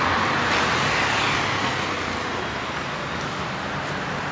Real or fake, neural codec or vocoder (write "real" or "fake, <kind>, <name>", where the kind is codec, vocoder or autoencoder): real